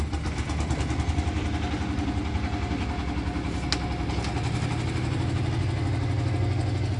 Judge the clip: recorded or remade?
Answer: recorded